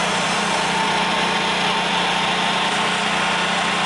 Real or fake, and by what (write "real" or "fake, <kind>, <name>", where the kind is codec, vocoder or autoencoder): real